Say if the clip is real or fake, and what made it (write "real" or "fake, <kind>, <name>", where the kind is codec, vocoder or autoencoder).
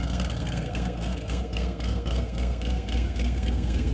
fake, codec, SNAC